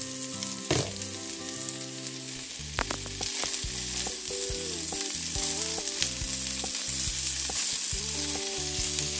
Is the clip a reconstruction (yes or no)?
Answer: no